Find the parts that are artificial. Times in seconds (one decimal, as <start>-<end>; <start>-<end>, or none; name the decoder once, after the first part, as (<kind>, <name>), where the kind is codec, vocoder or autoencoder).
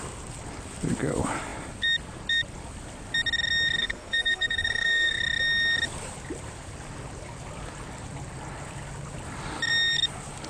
3.8-5.2 (codec, SNAC)